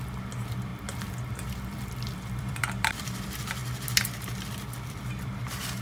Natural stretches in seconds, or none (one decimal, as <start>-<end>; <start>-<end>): 0.7-1.3; 3.6-4.9